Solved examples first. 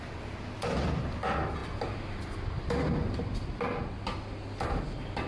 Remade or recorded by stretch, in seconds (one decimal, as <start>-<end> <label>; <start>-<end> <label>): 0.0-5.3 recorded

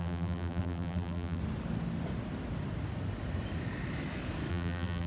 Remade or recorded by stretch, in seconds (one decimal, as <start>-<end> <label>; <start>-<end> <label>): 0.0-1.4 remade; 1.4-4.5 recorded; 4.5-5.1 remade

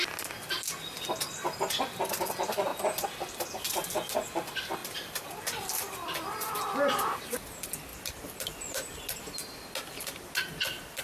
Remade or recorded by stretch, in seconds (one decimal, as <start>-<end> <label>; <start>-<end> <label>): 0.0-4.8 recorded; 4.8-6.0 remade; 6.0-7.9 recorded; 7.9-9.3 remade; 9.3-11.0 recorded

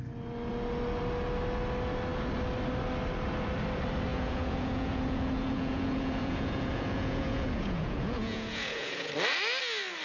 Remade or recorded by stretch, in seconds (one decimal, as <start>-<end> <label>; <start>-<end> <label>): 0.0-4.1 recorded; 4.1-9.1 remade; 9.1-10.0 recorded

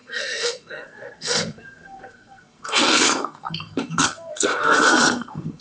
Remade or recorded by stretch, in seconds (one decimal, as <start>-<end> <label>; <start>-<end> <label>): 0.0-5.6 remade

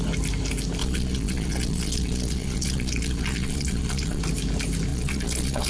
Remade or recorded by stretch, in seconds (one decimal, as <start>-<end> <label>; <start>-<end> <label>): 0.0-0.8 recorded; 0.8-4.2 remade; 4.2-4.9 recorded; 4.9-5.7 remade